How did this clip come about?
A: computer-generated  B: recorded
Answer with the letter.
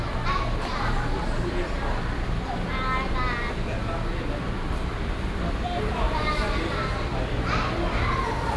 B